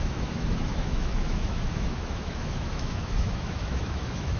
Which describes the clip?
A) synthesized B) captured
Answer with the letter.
A